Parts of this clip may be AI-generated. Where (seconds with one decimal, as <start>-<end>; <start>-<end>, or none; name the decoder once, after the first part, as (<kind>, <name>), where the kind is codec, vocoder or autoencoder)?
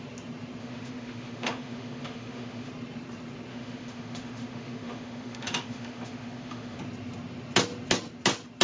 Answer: 0.6-2.7 (autoencoder, DAC-VAE); 3.5-6.8